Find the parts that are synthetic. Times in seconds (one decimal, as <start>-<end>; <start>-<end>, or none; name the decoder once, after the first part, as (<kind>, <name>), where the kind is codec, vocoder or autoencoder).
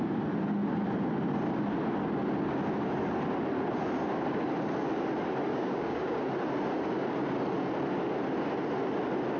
5.5-6.2 (codec, DAC)